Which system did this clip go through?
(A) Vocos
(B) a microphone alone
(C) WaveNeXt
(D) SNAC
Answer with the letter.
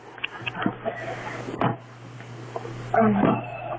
B